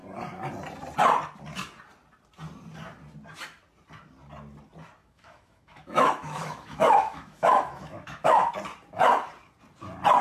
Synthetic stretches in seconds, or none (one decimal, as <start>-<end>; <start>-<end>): 5.0-8.5